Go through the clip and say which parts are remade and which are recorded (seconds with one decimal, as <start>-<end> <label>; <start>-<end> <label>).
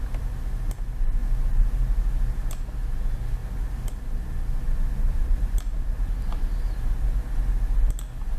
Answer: 0.0-1.2 recorded; 1.2-1.8 remade; 1.8-8.4 recorded